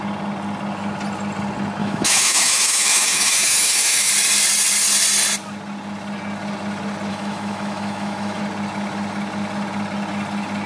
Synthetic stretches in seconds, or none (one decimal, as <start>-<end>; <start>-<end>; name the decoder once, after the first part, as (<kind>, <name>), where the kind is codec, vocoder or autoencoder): 1.8-4.1 (autoencoder, DAC-VAE); 7.1-8.4

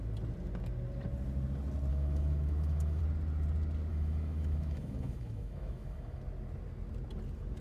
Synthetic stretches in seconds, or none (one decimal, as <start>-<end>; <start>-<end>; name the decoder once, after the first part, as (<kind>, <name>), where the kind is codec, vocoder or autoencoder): 1.9-3.0 (autoencoder, DAC-VAE); 3.9-6.2

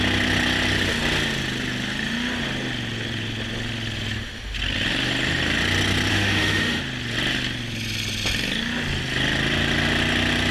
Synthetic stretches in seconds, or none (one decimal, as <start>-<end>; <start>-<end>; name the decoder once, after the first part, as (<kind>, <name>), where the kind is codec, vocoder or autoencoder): 6.1-6.8 (autoencoder, DAC-VAE)

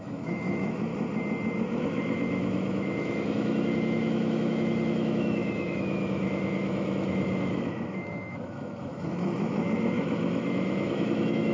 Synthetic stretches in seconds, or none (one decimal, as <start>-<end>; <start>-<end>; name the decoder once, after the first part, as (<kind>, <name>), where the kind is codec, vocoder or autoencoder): 0.0-0.9 (autoencoder, DAC-VAE); 1.8-11.5

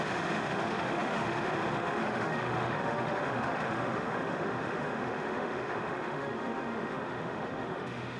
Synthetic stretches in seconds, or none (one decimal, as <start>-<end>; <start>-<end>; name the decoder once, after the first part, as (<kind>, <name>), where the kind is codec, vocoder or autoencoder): 0.0-8.2 (autoencoder, DAC-VAE)

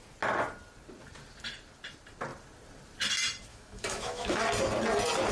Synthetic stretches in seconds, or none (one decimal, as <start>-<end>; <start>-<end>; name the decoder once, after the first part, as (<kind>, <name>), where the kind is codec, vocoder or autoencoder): 3.5-4.4 (autoencoder, DAC-VAE)

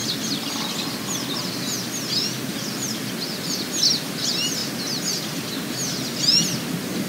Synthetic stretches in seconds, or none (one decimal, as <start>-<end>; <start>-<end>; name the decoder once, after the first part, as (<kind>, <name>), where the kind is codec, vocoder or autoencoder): none